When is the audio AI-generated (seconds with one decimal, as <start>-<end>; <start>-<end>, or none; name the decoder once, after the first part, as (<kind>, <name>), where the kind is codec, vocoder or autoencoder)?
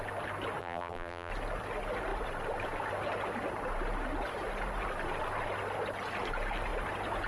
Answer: 0.6-1.3 (vocoder, BigVGAN v2)